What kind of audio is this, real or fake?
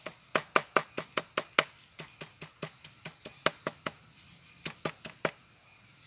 real